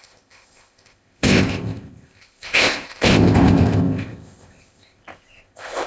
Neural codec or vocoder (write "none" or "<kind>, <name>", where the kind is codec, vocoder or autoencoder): codec, ZipCodec